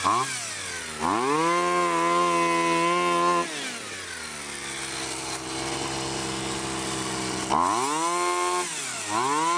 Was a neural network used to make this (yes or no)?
no